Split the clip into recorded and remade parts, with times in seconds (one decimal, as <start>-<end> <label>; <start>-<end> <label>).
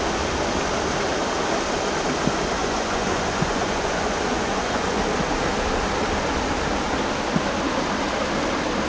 0.0-2.6 recorded; 2.6-5.0 remade; 5.0-8.9 recorded